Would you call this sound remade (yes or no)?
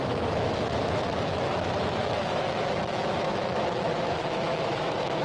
yes